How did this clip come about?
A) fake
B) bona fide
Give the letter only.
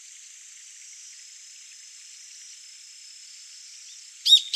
B